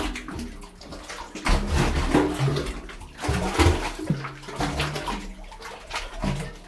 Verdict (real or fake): real